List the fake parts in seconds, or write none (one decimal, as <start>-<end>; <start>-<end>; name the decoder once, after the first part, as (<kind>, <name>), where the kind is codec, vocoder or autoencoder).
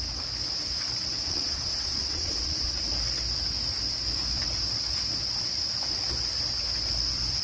1.2-2.8 (vocoder, Vocos)